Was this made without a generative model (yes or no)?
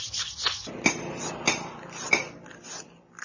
yes